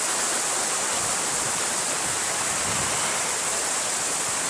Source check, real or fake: real